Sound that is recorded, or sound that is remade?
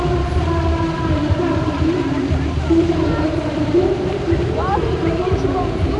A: remade